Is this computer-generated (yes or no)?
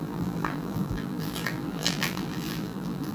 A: yes